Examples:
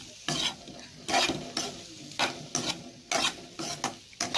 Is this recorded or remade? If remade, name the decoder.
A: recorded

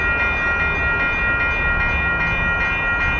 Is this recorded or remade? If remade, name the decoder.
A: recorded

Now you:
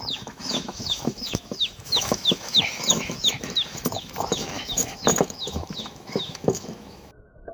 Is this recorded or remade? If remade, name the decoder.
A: remade, autoencoder, DAC-VAE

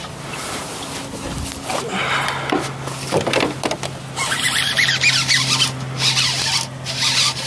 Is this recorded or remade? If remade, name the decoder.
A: recorded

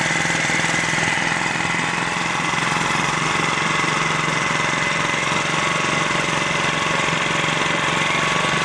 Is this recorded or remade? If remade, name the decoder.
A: recorded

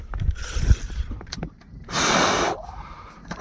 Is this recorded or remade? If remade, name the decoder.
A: remade, vocoder, BigVGAN v2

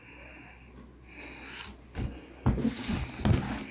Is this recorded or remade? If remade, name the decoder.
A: recorded